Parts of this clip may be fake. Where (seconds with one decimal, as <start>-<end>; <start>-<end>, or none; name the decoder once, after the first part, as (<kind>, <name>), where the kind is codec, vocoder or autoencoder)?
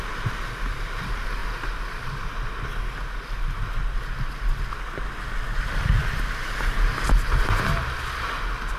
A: none